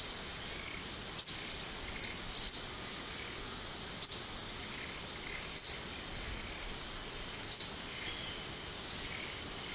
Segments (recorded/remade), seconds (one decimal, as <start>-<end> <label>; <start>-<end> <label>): 0.0-9.7 recorded